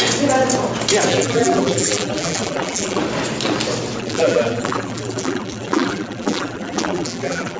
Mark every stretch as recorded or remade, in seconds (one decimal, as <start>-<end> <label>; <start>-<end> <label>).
0.0-1.1 recorded; 1.1-3.0 remade; 3.0-4.0 recorded; 4.0-7.6 remade